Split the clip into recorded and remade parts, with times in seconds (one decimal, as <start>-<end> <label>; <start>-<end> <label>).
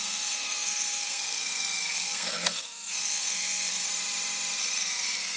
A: 0.0-3.9 remade; 3.9-4.6 recorded; 4.6-5.4 remade